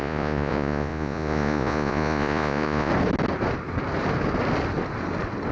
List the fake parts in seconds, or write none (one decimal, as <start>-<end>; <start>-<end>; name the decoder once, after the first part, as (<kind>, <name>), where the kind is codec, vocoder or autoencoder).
0.0-2.9 (vocoder, Vocos)